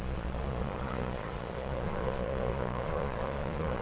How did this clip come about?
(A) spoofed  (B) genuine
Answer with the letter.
A